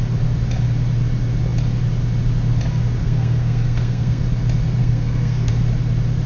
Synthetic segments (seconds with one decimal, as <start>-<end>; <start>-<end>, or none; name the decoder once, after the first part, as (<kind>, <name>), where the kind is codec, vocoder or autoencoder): 3.0-4.2 (codec, SNAC); 4.8-5.5